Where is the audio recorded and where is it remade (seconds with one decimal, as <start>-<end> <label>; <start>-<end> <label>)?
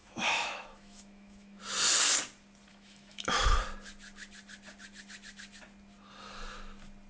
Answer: 0.0-1.6 remade; 1.6-2.7 recorded; 2.7-3.6 remade; 3.6-7.1 recorded